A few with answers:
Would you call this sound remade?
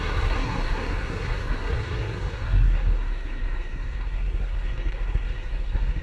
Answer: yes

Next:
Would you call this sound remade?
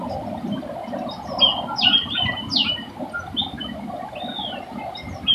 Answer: no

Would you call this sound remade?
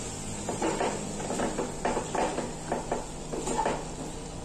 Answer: no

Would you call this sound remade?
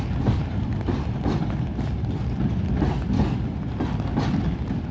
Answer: no